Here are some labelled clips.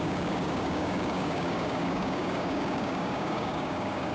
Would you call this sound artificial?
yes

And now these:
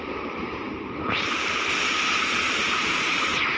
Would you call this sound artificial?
yes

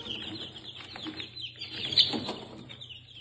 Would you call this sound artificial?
yes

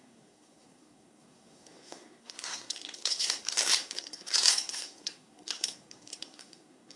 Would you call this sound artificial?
yes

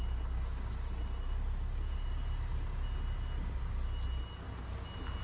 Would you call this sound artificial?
no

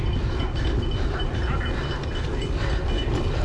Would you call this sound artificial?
no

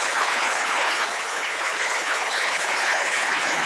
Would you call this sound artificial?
yes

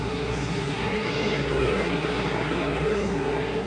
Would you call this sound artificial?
yes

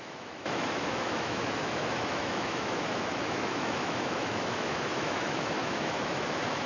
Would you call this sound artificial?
yes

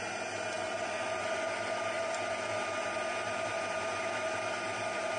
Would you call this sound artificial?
no